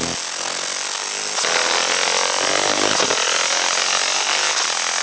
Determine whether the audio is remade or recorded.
recorded